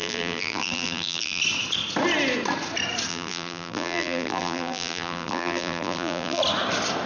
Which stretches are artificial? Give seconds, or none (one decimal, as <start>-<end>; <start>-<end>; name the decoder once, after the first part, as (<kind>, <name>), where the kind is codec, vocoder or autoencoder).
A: 0.0-1.4 (vocoder, BigVGAN v2); 3.1-6.4